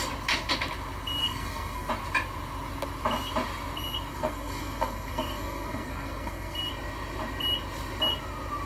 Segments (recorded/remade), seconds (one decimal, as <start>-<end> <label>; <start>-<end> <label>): 0.0-1.2 recorded; 1.2-1.9 remade; 1.9-4.1 recorded; 4.1-6.7 remade; 6.7-8.7 recorded